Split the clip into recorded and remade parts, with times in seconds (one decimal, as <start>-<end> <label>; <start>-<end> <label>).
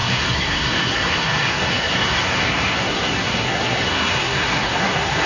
0.0-5.3 remade